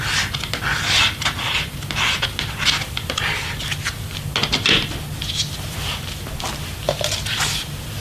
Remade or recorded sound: recorded